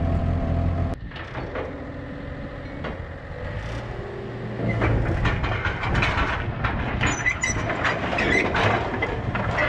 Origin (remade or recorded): recorded